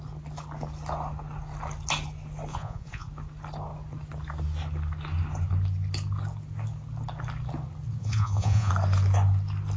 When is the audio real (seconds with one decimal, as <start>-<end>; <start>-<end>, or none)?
0.0-2.5; 3.1-8.0; 8.7-9.8